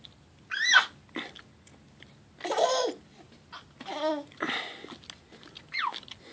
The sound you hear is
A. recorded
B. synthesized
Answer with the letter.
A